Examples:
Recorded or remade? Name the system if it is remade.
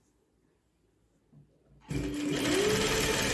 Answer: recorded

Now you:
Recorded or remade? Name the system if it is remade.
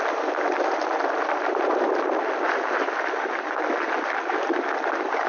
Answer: remade, vocoder, BigVGAN v2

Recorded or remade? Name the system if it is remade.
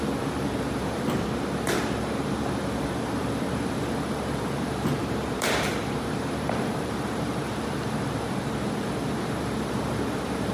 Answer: remade, vocoder, BigVGAN v2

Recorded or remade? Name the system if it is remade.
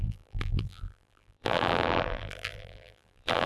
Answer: remade, vocoder, BigVGAN v2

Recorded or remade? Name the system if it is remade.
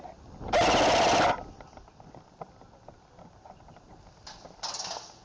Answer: recorded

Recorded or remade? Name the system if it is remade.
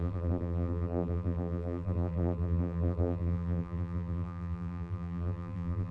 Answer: remade, vocoder, BigVGAN v2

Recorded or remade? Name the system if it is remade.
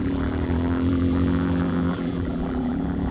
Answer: remade, vocoder, BigVGAN v2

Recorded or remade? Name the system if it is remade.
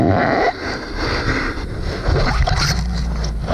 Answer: recorded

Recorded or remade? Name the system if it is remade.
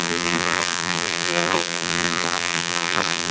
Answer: remade, vocoder, BigVGAN v2